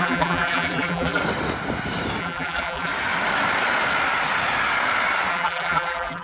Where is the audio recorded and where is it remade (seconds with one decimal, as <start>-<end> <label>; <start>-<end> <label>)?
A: 0.0-1.2 remade; 1.2-2.2 recorded; 2.2-2.9 remade; 2.9-5.3 recorded; 5.3-6.2 remade